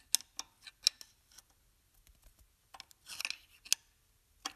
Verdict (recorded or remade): recorded